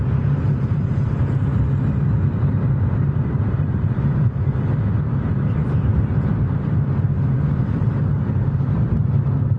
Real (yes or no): no